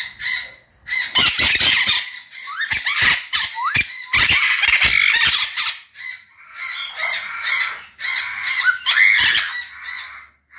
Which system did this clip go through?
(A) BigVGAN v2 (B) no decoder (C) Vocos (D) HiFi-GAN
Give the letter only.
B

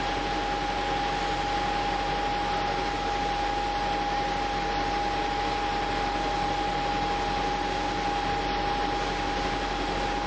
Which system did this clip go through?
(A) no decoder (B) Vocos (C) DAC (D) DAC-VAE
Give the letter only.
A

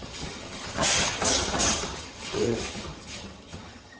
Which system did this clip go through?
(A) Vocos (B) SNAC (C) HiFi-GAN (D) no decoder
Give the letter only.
C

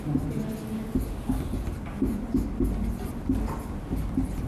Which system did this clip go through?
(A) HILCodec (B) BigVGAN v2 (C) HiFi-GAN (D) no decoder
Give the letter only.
D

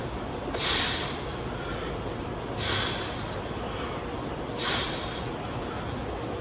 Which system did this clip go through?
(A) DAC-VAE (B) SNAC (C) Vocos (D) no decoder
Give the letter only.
D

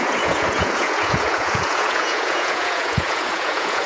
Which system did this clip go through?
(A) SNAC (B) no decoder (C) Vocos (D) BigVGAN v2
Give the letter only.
C